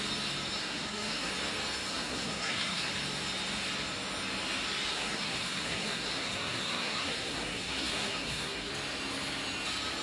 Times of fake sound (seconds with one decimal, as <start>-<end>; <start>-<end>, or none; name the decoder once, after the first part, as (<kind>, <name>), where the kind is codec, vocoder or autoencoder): 0.6-1.3 (codec, SNAC); 1.9-2.9; 4.9-8.7